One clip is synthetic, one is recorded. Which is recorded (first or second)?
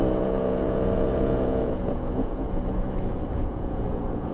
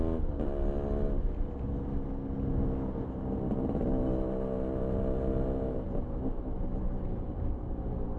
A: second